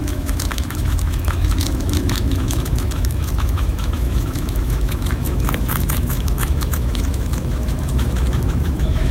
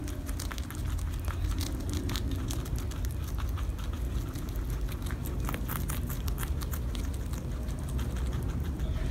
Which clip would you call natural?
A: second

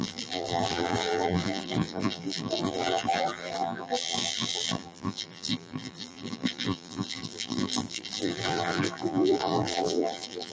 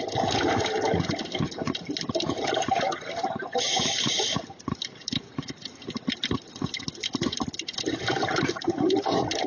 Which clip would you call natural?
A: second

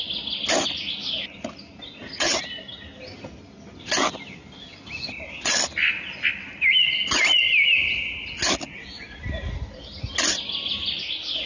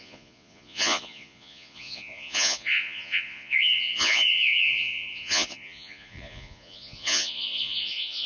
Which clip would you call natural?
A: first